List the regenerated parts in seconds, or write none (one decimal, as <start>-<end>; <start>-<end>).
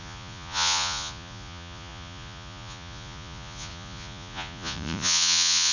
0.0-5.7